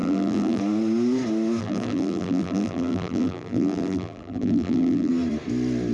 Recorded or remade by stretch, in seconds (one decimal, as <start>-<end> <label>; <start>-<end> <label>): 0.0-0.6 remade; 0.6-1.6 recorded; 1.6-5.1 remade; 5.1-5.9 recorded